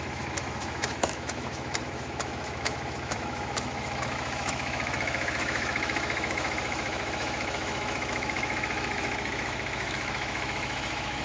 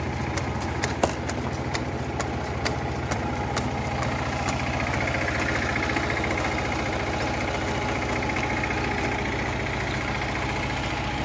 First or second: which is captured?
second